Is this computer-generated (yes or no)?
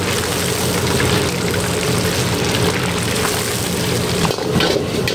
no